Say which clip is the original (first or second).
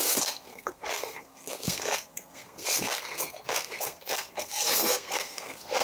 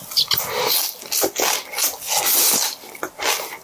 second